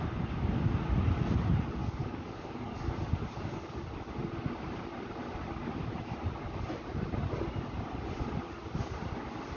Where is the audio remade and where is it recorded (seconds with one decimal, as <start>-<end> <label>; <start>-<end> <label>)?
0.0-1.8 recorded; 1.8-2.8 remade; 2.8-9.6 recorded